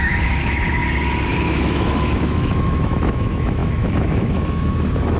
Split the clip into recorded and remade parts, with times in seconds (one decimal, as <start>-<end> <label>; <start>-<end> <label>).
0.0-0.8 remade; 0.8-1.3 recorded; 1.3-5.2 remade